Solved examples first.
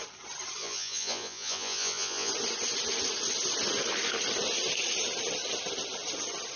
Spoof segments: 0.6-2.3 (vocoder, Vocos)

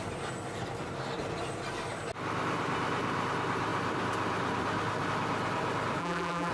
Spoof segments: 6.0-6.5 (vocoder, BigVGAN v2)

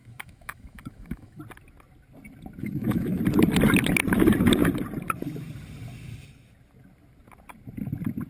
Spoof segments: 0.0-1.4 (autoencoder, DAC-VAE); 2.6-3.2

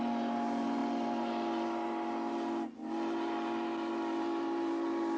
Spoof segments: none

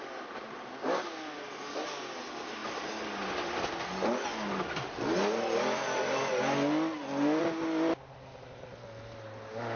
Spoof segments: none

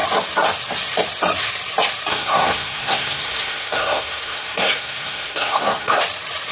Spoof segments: 2.1-6.0 (codec, SNAC)

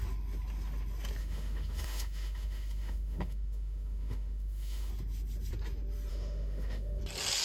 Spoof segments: 1.2-4.9 (autoencoder, DAC-VAE); 6.1-7.0